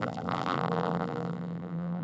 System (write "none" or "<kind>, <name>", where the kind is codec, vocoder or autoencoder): vocoder, BigVGAN v2